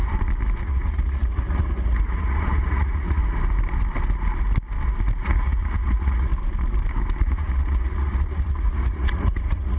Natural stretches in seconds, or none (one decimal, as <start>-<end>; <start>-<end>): 0.0-0.6; 3.2-5.2; 6.3-7.2